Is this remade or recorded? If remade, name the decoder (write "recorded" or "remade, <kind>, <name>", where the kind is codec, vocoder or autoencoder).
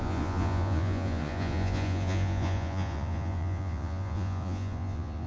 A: remade, vocoder, Vocos